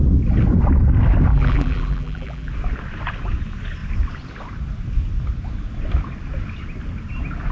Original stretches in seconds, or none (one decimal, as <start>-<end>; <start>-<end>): 0.0-1.3; 2.5-7.5